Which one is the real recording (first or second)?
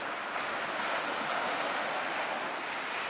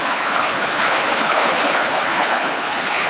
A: first